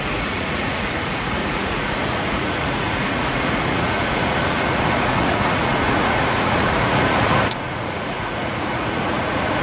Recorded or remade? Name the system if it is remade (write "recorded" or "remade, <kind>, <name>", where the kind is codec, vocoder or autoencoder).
remade, vocoder, Vocos